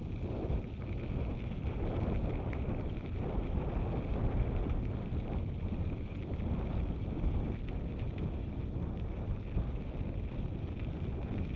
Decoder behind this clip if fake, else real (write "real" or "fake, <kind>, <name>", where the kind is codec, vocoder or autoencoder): real